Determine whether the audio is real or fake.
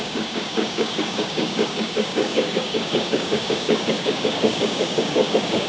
fake